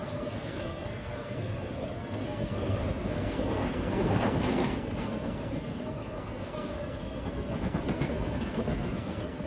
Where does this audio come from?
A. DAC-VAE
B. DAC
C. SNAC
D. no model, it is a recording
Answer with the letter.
C